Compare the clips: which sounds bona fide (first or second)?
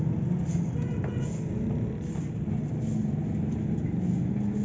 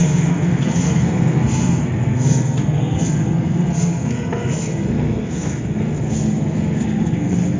first